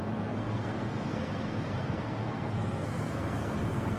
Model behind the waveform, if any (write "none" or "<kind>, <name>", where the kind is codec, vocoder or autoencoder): codec, SNAC